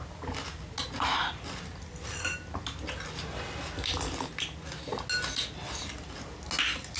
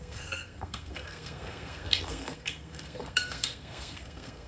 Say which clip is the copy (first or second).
second